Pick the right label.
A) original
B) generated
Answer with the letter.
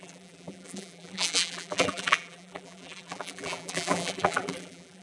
B